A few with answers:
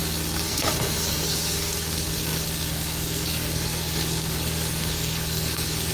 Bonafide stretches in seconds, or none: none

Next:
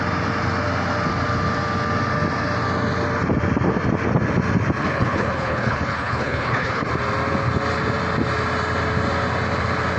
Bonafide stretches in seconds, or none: 0.0-4.8; 6.9-10.0

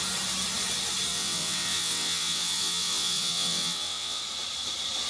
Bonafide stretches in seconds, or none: 0.0-1.1; 4.2-5.1